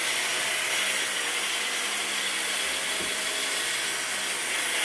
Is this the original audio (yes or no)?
yes